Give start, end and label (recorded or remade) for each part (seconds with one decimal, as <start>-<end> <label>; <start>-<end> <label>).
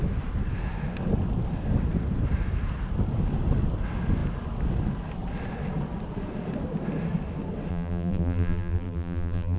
0.0-7.7 recorded; 7.7-9.6 remade